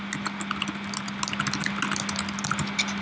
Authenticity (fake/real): real